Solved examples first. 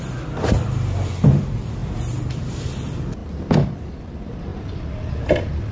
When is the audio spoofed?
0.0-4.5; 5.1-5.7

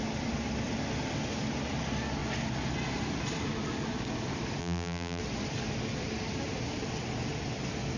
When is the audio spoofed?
4.6-5.2

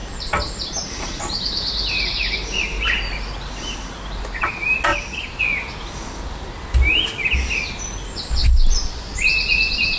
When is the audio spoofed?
0.0-4.5; 4.9-5.4; 8.4-9.1

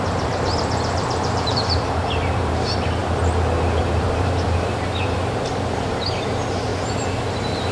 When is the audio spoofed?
0.0-3.0; 3.8-6.7; 7.3-7.7

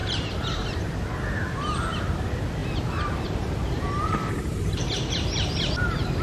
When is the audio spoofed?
0.0-0.8

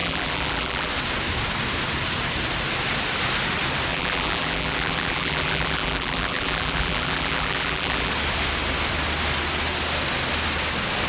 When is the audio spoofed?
0.0-0.9; 3.9-8.1

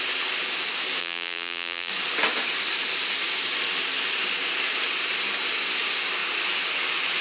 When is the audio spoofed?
1.0-1.9